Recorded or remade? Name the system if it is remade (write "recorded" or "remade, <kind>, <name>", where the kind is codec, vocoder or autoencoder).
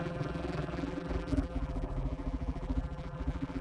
remade, vocoder, BigVGAN v2